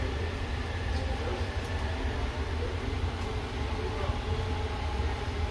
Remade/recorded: recorded